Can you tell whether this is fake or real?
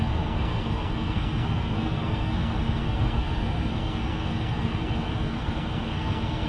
fake